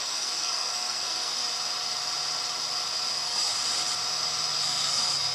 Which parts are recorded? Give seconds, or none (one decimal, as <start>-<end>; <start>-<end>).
1.4-3.1; 3.5-4.6